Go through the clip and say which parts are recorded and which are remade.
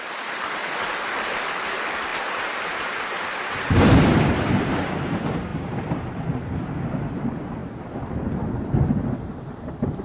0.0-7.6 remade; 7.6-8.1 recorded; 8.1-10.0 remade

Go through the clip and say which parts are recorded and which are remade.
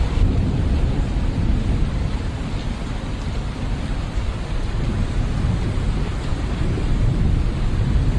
0.0-8.2 remade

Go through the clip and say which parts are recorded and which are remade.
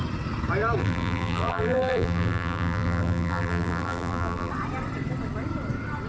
0.0-0.8 recorded; 0.8-4.5 remade; 4.5-6.1 recorded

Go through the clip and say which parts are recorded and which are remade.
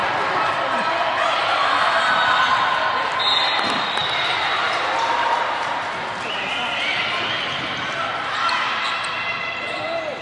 0.0-0.8 remade; 0.8-4.0 recorded; 4.0-6.5 remade; 6.5-10.2 recorded